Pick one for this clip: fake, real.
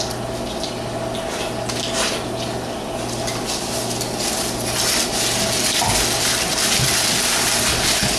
real